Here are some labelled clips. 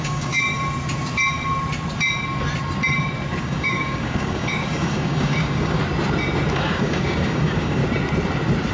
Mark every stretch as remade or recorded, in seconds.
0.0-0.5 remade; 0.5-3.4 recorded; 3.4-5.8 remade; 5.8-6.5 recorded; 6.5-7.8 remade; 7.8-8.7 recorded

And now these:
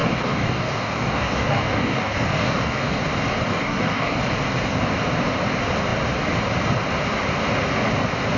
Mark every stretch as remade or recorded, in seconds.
0.0-3.0 remade; 3.0-3.5 recorded; 3.5-4.2 remade; 4.2-8.4 recorded

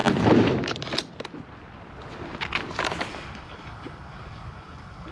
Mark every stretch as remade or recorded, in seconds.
0.0-3.1 recorded; 3.1-5.1 remade

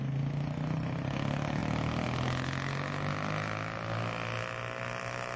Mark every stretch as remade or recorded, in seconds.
0.0-5.4 recorded